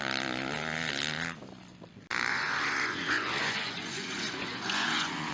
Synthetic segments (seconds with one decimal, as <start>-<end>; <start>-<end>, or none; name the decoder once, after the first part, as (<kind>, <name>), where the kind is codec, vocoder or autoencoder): 2.3-5.3 (vocoder, Vocos)